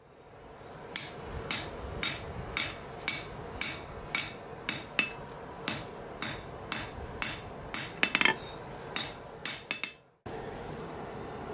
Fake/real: real